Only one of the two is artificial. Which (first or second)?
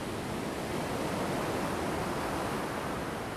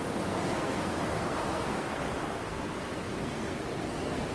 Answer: second